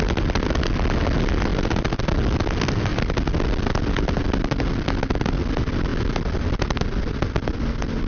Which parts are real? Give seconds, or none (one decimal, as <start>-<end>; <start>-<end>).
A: 0.0-8.1

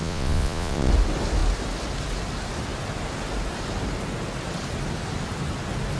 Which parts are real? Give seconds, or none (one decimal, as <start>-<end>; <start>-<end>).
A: 0.9-6.0

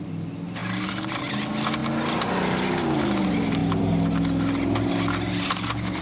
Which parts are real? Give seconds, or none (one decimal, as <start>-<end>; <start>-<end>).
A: 0.0-6.0